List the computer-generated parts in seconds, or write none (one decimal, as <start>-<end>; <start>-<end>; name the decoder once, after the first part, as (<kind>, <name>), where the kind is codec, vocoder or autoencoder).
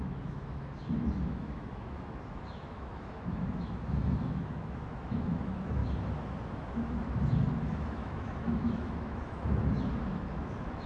0.0-5.8 (autoencoder, DAC-VAE); 6.5-10.9